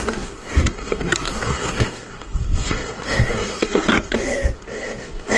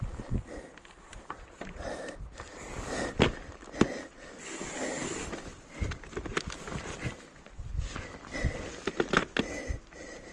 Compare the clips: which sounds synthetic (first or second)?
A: first